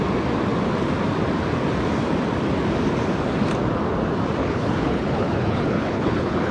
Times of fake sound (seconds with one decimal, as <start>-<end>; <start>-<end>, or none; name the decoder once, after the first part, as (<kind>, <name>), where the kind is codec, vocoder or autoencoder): 4.4-6.5 (codec, HILCodec)